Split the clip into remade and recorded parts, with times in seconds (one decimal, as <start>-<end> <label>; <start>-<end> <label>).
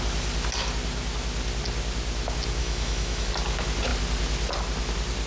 0.0-2.6 recorded; 2.6-3.3 remade; 3.3-5.3 recorded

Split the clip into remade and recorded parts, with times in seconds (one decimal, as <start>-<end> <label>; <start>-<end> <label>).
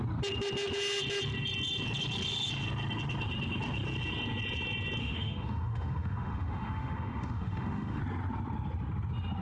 0.0-5.0 recorded; 5.0-8.0 remade; 8.0-9.4 recorded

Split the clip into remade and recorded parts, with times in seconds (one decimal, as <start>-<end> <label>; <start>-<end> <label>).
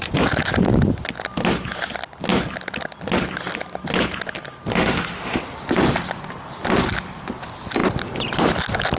0.0-4.7 recorded; 4.7-5.4 remade; 5.4-9.0 recorded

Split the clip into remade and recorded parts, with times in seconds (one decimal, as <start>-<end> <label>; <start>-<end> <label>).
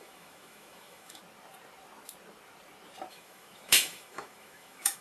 0.0-1.2 remade; 1.2-3.1 recorded; 3.1-5.0 remade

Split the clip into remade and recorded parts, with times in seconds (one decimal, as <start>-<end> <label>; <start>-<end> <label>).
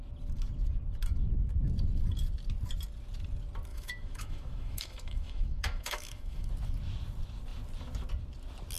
0.0-3.7 recorded; 3.7-6.5 remade; 6.5-8.8 recorded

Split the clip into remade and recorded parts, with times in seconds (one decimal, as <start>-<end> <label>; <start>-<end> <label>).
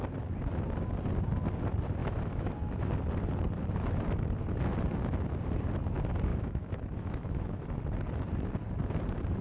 0.0-2.0 recorded; 2.0-2.5 remade; 2.5-6.3 recorded; 6.3-7.8 remade; 7.8-9.4 recorded